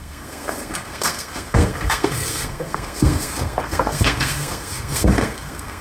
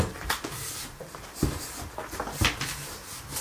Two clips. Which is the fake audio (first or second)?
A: first